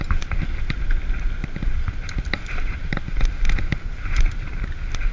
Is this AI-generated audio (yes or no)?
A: no